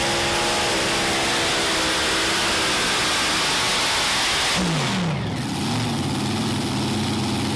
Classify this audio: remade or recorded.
recorded